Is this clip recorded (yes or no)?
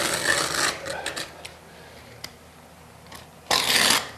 yes